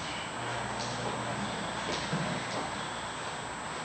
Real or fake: real